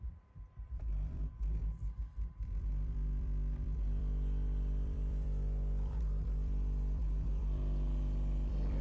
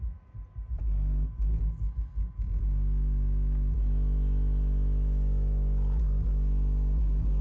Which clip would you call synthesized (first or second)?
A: first